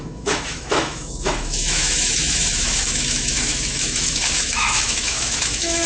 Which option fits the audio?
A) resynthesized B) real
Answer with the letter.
A